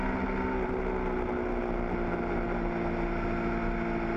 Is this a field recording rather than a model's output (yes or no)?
yes